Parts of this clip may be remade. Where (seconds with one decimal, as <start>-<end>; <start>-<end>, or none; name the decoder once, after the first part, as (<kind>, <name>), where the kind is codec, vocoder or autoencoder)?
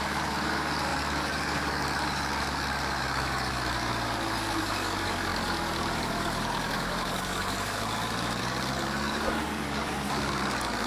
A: 0.0-10.9 (codec, DAC)